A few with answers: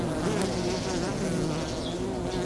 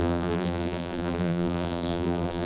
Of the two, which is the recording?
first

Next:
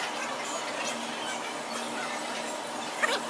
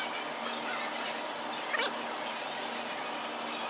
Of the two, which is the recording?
second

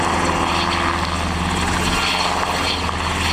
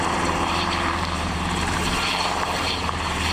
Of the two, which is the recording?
first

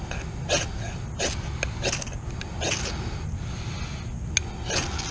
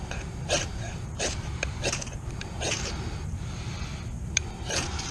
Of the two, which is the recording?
first